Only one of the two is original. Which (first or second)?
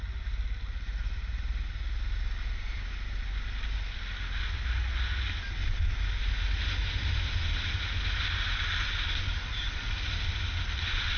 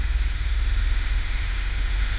first